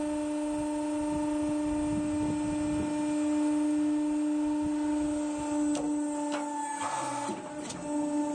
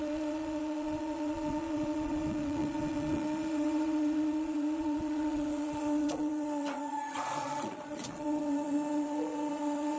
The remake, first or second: second